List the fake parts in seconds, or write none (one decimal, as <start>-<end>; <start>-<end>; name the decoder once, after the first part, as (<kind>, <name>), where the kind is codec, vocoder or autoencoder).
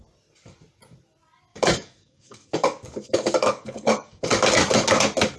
1.5-4.7 (codec, DAC)